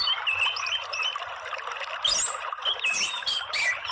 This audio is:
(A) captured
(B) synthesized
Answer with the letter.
A